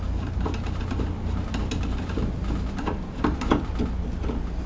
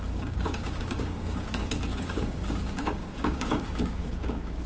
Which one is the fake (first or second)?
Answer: second